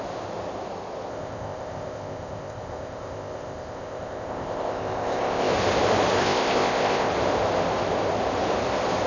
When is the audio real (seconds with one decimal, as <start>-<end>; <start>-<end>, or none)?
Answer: 0.0-1.1; 5.5-6.2; 7.1-9.1